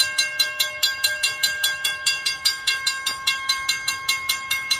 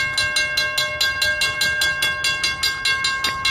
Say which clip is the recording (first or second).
second